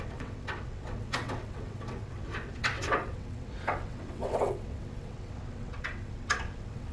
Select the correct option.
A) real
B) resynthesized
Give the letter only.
B